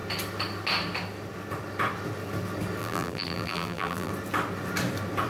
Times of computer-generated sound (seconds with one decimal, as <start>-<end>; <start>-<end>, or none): 2.8-4.1

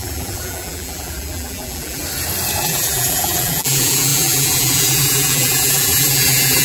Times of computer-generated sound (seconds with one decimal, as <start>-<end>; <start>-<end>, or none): 0.0-2.0; 2.6-6.6

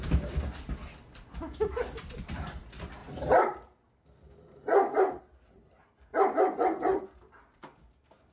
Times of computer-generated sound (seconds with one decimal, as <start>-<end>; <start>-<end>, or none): 3.0-5.2; 6.1-7.0

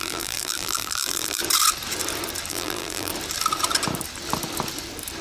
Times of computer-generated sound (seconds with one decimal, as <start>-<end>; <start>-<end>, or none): 0.0-1.4; 2.5-3.1

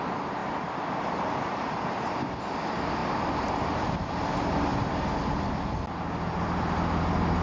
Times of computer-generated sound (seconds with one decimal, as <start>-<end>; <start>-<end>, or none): none

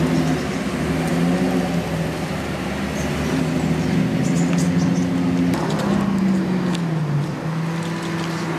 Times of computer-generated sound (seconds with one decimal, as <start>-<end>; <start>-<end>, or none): none

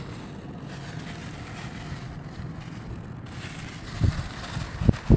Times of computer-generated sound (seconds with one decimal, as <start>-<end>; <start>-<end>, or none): none